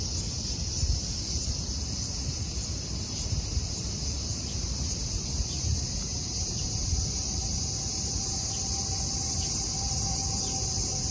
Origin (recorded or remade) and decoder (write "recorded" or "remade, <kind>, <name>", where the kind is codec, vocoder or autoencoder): remade, vocoder, BigVGAN v2